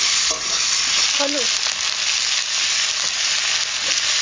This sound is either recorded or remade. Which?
recorded